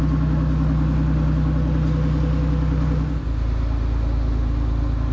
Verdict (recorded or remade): recorded